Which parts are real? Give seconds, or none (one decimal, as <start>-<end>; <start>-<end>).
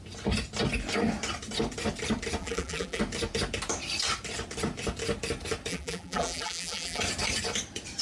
0.0-2.4; 3.0-5.7; 7.0-8.0